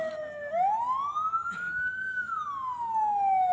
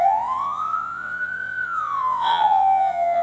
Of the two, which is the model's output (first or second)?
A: second